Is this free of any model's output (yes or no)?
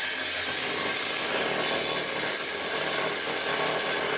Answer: yes